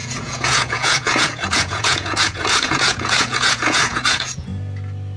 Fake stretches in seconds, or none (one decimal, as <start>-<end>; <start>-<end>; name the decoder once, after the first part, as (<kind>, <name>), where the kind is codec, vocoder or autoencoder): 0.0-4.5 (vocoder, Vocos)